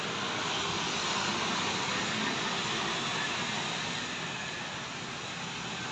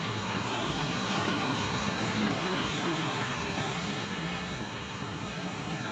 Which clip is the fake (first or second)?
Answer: second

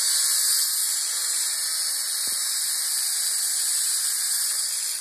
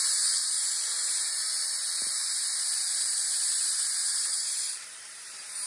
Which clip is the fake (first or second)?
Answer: second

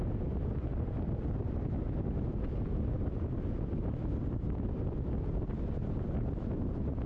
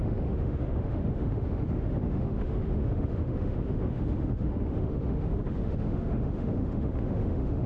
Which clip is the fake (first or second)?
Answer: second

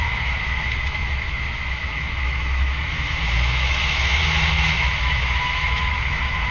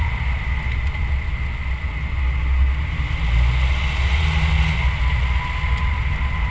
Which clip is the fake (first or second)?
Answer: first